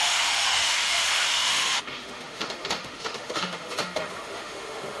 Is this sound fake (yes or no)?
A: yes